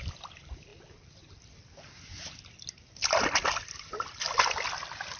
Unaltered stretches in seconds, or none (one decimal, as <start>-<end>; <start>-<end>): 0.0-5.2